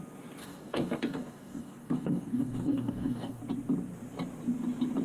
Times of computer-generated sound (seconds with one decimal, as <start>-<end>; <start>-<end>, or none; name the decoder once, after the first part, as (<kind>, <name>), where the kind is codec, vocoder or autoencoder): 0.4-3.4 (codec, DAC)